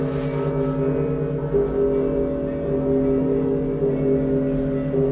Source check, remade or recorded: recorded